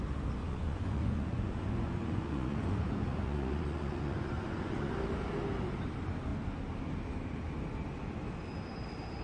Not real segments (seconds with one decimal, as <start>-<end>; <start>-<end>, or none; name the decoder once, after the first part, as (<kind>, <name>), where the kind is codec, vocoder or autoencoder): 0.4-4.9 (vocoder, Vocos)